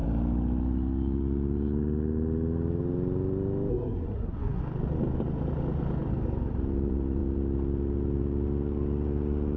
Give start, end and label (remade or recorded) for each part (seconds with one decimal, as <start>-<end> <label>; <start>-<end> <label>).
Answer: 0.0-3.7 recorded; 3.7-4.6 remade; 4.6-9.6 recorded